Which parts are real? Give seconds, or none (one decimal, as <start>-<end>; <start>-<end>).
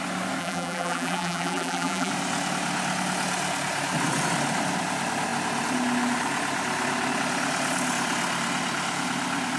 0.0-0.4; 2.1-9.6